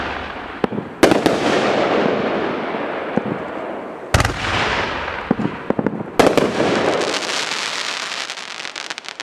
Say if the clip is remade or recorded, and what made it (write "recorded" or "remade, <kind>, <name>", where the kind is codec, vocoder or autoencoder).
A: recorded